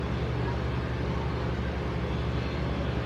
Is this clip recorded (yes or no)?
yes